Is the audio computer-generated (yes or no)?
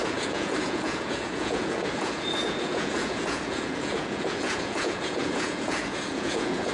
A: yes